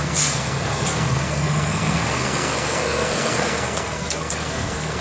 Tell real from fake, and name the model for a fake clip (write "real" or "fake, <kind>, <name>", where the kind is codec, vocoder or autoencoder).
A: fake, codec, SNAC